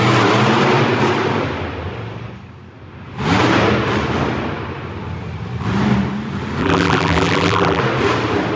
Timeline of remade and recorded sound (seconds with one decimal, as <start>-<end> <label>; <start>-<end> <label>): 0.0-6.6 recorded; 6.6-7.8 remade; 7.8-8.6 recorded